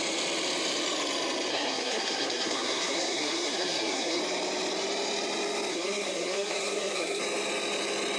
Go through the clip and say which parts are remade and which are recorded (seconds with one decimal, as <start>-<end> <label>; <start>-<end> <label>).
0.0-1.5 recorded; 1.5-4.2 remade; 4.2-5.7 recorded; 5.7-7.2 remade; 7.2-8.2 recorded